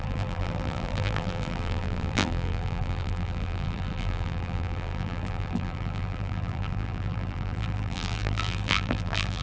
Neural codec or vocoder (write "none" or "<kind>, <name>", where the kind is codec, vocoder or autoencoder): vocoder, BigVGAN v2